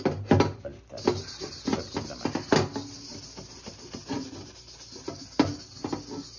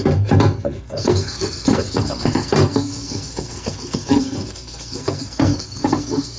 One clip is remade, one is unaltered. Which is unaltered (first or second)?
first